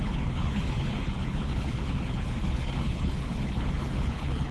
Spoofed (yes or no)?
yes